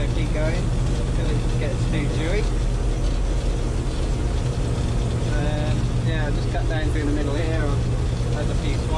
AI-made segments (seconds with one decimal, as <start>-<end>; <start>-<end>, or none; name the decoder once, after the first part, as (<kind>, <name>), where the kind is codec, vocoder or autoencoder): none